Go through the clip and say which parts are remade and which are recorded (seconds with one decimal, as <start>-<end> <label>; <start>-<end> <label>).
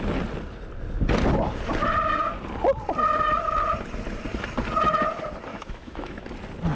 0.0-5.5 recorded; 5.5-6.2 remade; 6.2-6.8 recorded